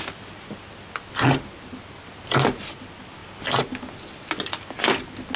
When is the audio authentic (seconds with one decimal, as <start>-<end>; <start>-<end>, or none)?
0.0-5.4